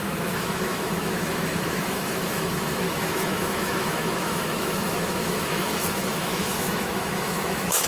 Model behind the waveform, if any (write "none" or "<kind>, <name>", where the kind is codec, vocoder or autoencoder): autoencoder, DAC-VAE